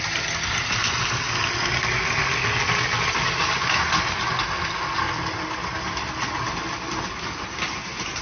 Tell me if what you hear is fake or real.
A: real